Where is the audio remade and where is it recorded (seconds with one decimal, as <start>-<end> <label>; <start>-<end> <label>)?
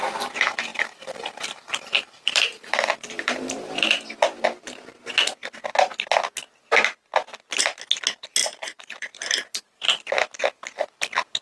0.0-0.7 recorded; 0.7-5.1 remade; 5.1-8.4 recorded; 8.4-10.1 remade; 10.1-11.4 recorded